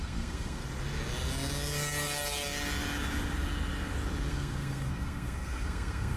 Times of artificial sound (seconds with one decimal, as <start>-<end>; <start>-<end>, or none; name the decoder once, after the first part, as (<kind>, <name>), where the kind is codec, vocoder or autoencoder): 0.0-0.6 (codec, SNAC); 4.3-6.2

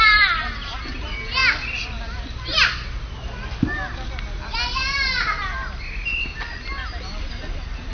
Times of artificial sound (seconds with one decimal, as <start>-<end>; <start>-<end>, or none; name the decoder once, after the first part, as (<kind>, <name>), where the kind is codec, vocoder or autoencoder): none

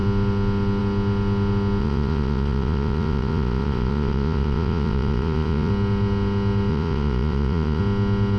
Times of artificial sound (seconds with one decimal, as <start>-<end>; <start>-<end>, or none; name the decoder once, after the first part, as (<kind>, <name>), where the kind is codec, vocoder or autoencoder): 1.8-5.7 (vocoder, Vocos); 6.7-7.8

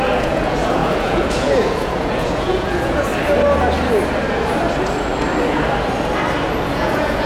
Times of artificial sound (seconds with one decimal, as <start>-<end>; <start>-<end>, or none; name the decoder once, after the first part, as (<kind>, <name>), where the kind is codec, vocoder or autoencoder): 0.0-3.1 (vocoder, Vocos); 6.6-7.3

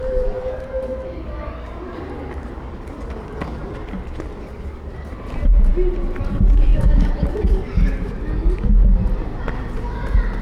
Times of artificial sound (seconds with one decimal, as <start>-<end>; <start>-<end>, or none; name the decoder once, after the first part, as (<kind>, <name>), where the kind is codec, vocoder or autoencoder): 0.0-3.6 (codec, DAC); 4.4-4.9; 6.3-9.0

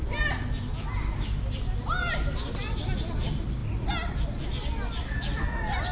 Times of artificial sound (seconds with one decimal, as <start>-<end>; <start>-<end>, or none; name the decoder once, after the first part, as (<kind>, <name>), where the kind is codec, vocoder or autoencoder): none

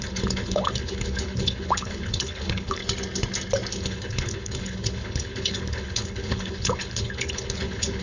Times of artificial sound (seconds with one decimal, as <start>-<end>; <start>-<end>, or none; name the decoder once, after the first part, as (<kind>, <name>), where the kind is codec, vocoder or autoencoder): 0.0-2.8 (codec, HILCodec); 3.7-8.0